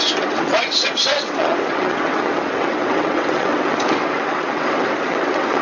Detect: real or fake fake